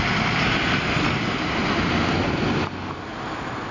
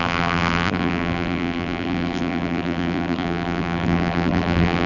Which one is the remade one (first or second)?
second